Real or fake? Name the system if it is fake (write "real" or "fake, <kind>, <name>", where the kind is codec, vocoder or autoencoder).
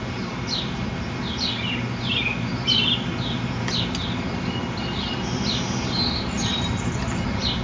real